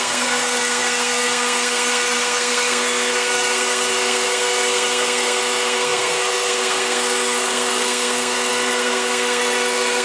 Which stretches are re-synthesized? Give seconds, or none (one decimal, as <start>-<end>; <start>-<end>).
0.0-10.0